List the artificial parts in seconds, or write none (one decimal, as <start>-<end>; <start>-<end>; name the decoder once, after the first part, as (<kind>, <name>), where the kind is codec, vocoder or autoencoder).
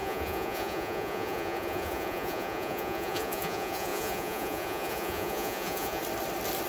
0.0-6.0 (vocoder, Vocos)